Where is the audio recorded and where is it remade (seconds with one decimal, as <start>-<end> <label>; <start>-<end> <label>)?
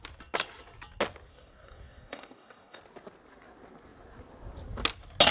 0.0-1.3 recorded; 1.3-2.8 remade; 2.8-5.3 recorded